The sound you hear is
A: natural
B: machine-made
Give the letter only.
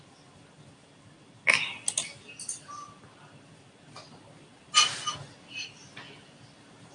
A